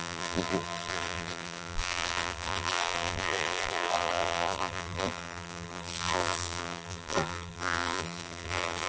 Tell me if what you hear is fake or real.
fake